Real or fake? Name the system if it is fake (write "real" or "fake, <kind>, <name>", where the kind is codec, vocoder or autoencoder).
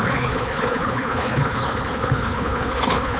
fake, codec, HILCodec